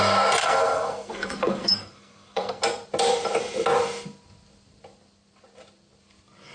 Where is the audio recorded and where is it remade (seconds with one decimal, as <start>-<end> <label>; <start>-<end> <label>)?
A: 0.0-0.4 recorded; 0.4-2.6 remade; 2.6-6.5 recorded